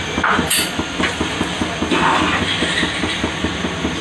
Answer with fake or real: real